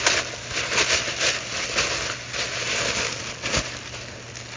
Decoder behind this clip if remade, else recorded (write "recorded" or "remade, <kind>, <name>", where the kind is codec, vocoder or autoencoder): recorded